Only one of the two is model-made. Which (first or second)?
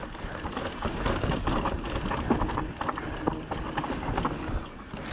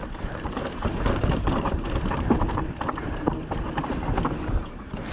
second